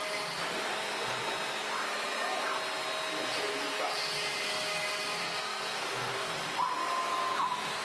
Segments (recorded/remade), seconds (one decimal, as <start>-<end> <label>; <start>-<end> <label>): 0.0-5.2 recorded; 5.2-6.3 remade; 6.3-7.8 recorded